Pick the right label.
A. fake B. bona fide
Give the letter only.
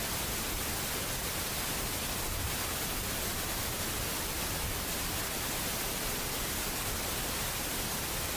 B